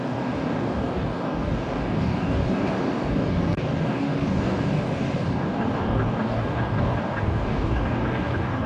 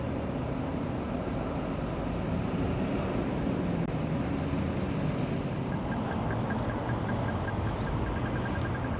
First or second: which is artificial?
first